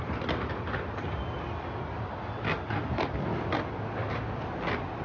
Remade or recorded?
recorded